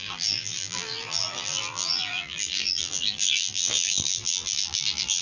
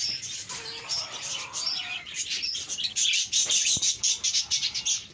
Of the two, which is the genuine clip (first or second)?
second